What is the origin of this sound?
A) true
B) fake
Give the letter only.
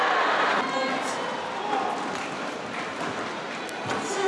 A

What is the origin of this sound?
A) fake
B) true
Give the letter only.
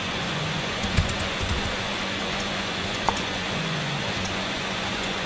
A